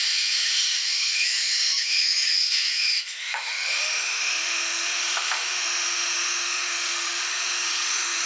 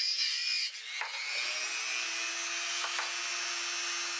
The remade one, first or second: first